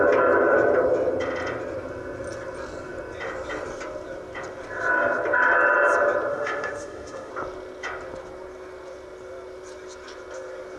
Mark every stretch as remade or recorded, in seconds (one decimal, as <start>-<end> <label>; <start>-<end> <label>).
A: 0.0-6.3 recorded; 6.3-7.3 remade; 7.3-10.8 recorded